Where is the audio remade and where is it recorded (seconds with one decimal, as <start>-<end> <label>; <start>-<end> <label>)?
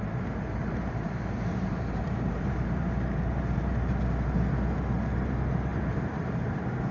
0.0-0.6 recorded; 0.6-3.9 remade; 3.9-6.9 recorded